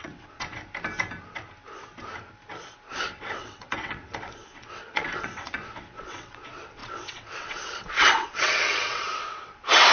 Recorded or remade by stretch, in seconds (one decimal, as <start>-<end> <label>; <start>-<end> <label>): 0.0-0.6 remade; 0.6-2.9 recorded; 2.9-9.9 remade